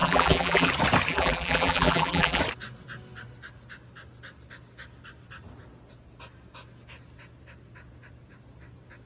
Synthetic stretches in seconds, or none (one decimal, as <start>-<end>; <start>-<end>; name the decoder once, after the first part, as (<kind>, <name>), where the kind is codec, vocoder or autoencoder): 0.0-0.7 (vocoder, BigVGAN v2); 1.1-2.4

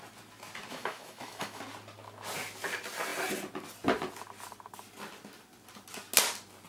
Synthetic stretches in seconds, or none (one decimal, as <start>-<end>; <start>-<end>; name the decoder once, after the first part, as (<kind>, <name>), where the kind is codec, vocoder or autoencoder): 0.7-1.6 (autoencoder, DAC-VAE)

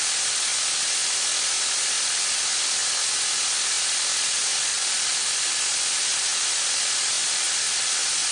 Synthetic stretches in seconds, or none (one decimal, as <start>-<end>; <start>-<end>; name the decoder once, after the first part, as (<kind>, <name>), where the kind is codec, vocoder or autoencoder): 4.7-5.6 (vocoder, BigVGAN v2)

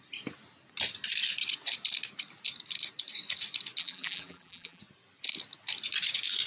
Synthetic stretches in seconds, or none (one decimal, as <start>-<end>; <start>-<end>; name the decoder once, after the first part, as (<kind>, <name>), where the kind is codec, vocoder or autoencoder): 3.8-4.8 (vocoder, BigVGAN v2)

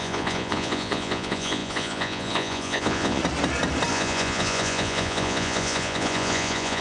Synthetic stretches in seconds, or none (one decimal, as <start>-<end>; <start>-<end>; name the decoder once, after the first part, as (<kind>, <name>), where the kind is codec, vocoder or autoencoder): 0.0-3.2 (vocoder, Vocos); 3.9-6.8

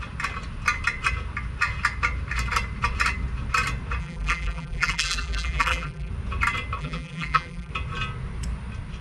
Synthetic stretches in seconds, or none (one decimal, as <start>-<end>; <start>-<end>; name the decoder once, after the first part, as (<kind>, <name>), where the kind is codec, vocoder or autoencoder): 4.0-6.1 (vocoder, BigVGAN v2); 6.8-7.7

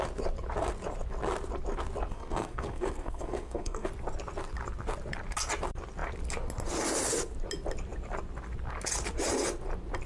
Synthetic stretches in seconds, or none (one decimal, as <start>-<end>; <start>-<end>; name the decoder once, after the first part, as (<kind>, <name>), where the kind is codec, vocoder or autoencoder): 2.1-3.9 (codec, SNAC)